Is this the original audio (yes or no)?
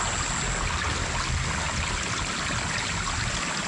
yes